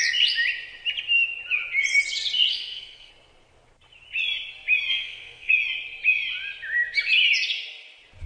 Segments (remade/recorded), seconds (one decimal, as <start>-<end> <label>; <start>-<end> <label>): 0.0-2.5 recorded; 2.5-3.1 remade; 3.1-4.9 recorded; 4.9-5.5 remade; 5.5-8.3 recorded